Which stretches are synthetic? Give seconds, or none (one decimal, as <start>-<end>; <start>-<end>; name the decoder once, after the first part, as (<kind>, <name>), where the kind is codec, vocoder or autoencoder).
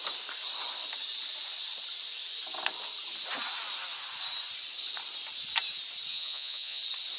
6.1-6.8 (vocoder, Vocos)